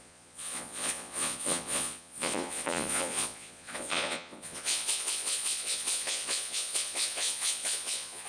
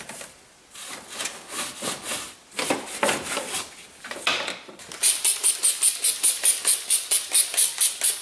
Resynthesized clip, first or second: first